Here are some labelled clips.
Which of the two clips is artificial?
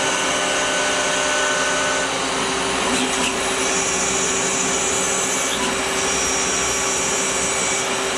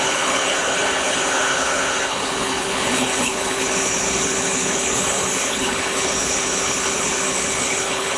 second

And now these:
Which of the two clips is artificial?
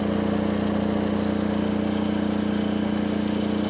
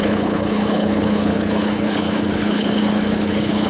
second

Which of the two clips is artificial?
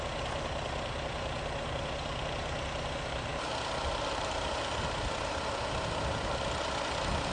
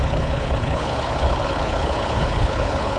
second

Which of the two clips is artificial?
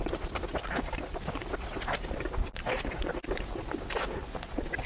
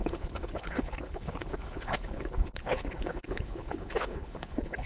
second